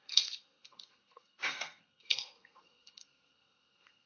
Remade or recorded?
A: remade